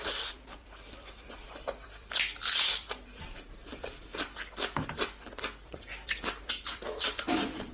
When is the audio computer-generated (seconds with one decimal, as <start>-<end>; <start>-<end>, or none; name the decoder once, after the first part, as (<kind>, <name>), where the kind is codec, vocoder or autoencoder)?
0.0-5.9 (vocoder, BigVGAN v2); 6.5-7.7